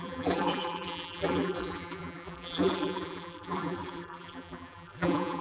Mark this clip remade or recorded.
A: remade